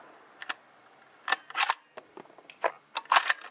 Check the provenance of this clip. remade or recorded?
recorded